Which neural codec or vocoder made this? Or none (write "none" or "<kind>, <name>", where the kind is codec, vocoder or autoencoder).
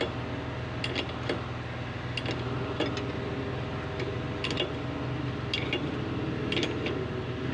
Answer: none